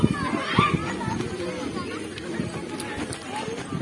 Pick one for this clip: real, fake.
real